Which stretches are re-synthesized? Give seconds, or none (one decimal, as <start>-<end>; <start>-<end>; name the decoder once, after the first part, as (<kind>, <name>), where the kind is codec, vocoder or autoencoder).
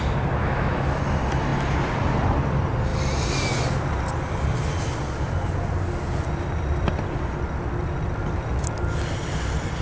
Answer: 0.4-1.0 (autoencoder, DAC-VAE)